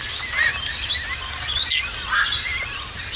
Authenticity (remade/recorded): recorded